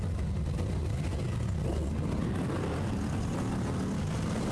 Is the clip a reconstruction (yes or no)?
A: no